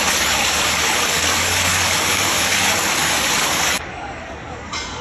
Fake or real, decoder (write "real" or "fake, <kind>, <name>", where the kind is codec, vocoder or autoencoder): fake, codec, DAC